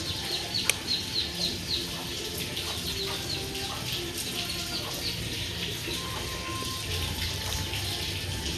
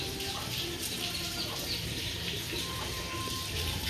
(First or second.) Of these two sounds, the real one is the first